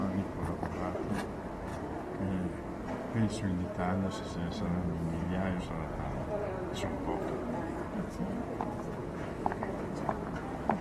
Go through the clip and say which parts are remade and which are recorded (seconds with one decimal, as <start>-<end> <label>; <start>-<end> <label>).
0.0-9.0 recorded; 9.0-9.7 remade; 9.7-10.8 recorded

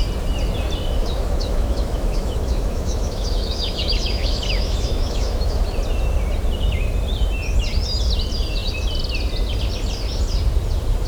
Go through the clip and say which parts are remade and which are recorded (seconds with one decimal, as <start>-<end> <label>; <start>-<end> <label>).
0.0-1.0 recorded; 1.0-5.6 remade; 5.6-11.1 recorded

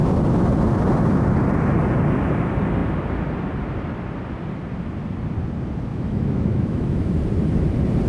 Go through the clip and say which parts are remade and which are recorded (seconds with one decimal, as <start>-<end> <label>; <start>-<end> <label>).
0.0-5.9 recorded; 5.9-7.1 remade; 7.1-8.1 recorded

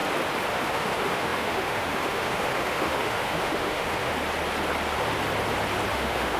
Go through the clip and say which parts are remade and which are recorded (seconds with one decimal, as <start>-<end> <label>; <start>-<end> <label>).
0.0-0.5 recorded; 0.5-4.1 remade; 4.1-5.9 recorded; 5.9-6.4 remade

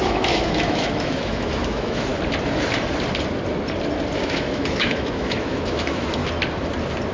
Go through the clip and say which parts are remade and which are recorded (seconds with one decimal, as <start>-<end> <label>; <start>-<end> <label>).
0.0-2.1 remade; 2.1-4.2 recorded; 4.2-6.2 remade; 6.2-7.1 recorded